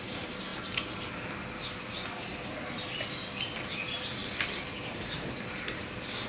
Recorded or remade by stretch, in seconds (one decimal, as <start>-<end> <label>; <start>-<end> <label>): 0.0-6.3 recorded